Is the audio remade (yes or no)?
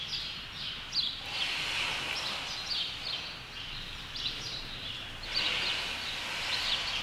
no